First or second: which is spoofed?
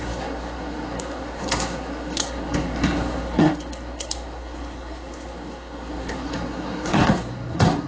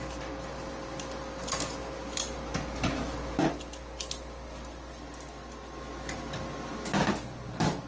first